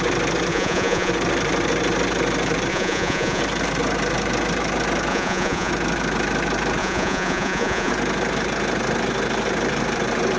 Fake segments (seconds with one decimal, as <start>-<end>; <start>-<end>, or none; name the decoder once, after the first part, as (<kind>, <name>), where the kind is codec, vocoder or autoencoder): 0.5-1.1 (vocoder, Vocos); 2.7-3.4; 5.1-5.7; 6.8-7.9

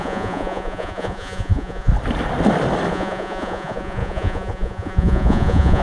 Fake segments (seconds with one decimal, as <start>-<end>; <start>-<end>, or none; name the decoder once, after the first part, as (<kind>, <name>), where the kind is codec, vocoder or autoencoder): 0.0-1.9 (vocoder, Vocos); 2.9-5.8